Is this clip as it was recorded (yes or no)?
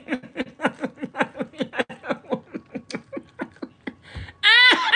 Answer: yes